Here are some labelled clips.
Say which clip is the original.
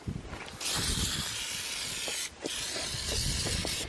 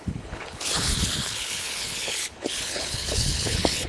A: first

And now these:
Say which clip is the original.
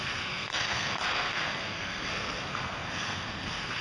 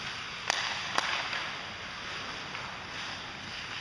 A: second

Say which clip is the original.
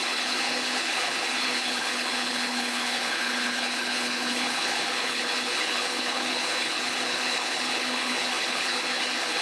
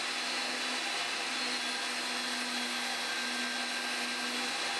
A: second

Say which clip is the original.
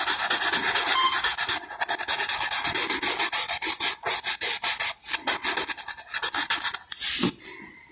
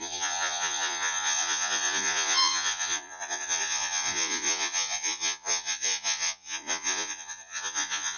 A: first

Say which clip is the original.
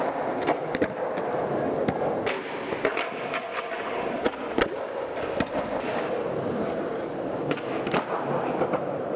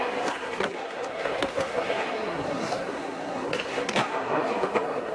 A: first